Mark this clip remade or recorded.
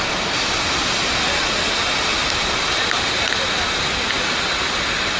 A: recorded